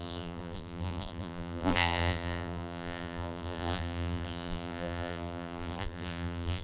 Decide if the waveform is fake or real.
fake